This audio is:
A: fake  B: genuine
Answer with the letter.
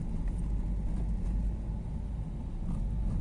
B